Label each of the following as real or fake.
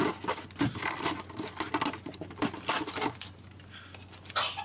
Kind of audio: real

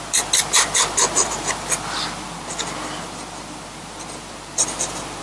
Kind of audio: real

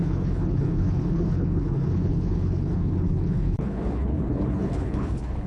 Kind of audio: fake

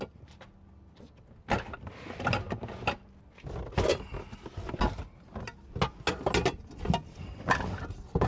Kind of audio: real